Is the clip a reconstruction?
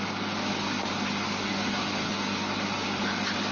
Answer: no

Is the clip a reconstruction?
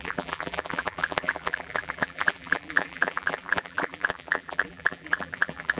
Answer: yes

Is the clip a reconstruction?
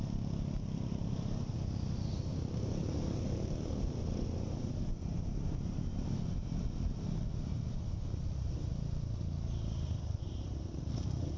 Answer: no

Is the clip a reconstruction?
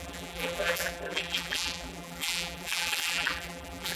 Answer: yes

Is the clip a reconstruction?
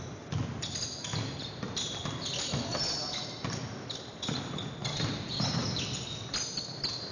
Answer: no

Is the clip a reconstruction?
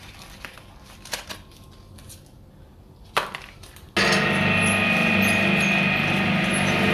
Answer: no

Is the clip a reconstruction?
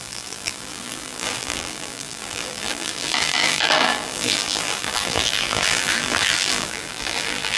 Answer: yes